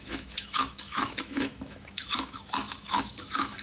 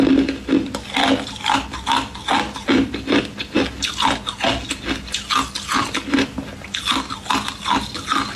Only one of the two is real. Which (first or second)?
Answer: second